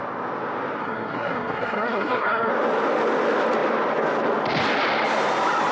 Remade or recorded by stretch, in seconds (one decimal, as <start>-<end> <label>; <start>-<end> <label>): 0.0-0.8 recorded; 0.8-2.5 remade; 2.5-5.7 recorded